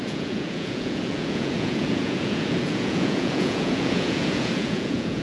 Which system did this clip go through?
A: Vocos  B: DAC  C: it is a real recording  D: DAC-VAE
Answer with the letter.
A